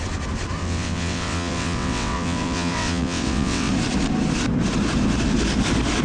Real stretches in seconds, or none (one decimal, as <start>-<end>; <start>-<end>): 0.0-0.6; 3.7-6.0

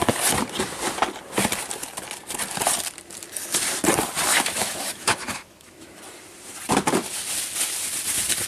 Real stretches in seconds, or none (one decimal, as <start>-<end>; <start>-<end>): 0.0-4.3; 6.0-8.5

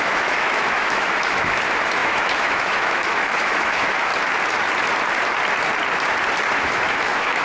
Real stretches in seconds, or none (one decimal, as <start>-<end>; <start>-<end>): 4.1-6.5